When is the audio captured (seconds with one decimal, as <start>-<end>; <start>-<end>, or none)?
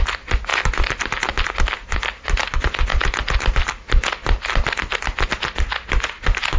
0.0-6.6